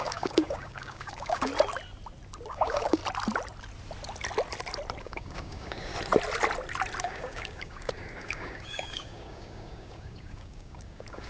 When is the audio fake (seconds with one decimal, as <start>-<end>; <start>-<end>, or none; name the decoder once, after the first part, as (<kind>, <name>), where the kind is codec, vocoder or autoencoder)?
0.0-1.5 (codec, DAC); 2.5-3.0; 5.0-5.9; 7.0-11.3